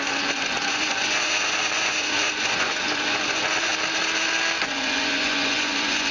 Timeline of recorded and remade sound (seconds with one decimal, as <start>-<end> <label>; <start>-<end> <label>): 0.0-3.7 remade; 3.7-4.6 recorded; 4.6-6.1 remade